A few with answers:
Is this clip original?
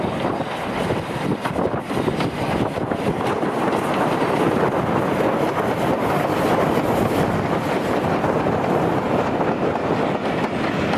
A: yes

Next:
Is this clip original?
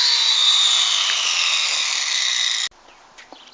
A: yes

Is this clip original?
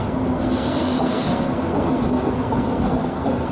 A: no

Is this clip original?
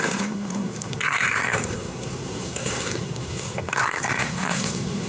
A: no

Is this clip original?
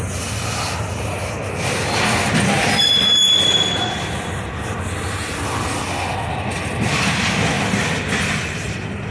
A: yes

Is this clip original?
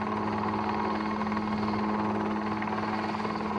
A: yes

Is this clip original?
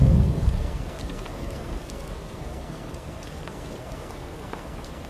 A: no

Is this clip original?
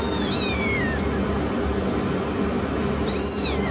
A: yes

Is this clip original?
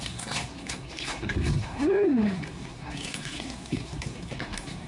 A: no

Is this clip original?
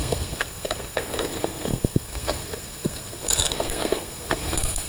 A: no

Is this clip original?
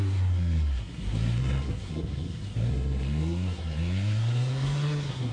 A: no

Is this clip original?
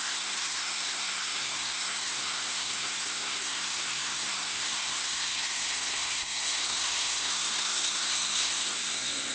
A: no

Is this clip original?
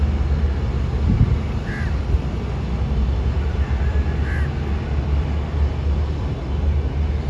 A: yes